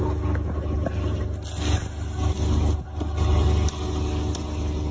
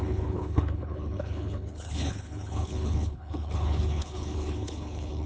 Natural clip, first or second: first